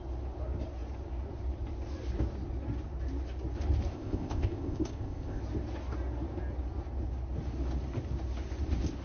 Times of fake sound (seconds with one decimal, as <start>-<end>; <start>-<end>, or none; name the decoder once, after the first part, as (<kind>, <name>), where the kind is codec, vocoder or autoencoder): 3.9-5.4 (codec, ZipCodec)

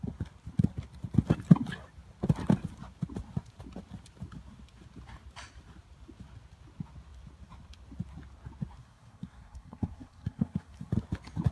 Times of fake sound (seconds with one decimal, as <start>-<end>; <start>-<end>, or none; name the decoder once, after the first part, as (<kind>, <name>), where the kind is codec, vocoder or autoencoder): 8.8-10.9 (codec, SNAC)

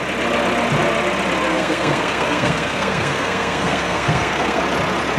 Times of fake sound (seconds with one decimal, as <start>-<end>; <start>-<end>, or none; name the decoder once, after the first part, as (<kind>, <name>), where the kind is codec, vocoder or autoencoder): 1.5-4.6 (codec, SNAC)

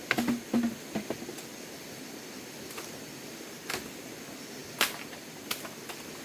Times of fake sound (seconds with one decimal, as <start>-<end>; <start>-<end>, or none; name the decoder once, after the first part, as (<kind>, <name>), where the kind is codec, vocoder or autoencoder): none

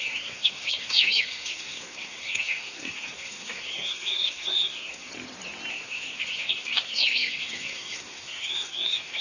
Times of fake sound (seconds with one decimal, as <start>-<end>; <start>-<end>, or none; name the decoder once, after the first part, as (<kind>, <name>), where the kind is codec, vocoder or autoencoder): 0.0-5.1 (codec, SNAC); 5.7-9.2

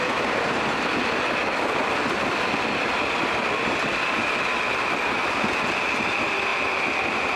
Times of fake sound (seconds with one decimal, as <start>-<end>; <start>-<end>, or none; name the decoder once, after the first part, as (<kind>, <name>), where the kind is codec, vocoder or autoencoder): 1.4-2.3 (vocoder, BigVGAN v2); 6.5-7.4

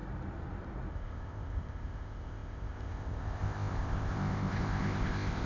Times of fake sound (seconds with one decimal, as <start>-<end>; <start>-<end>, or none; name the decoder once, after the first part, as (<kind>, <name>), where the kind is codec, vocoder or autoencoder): 0.9-5.5 (codec, ZipCodec)